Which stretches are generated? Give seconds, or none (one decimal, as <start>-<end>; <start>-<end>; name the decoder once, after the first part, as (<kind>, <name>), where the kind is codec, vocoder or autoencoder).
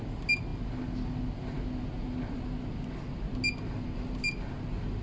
none